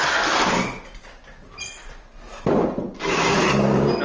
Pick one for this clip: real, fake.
real